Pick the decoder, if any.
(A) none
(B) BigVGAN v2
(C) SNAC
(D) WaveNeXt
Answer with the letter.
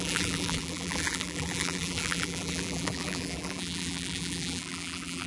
B